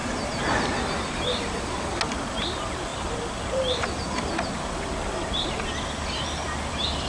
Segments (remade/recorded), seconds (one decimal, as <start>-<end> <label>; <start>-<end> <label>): 0.0-7.1 recorded